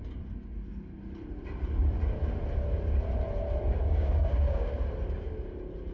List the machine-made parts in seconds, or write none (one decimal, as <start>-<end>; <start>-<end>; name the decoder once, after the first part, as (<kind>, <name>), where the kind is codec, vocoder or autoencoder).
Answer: 3.8-4.8 (codec, DAC)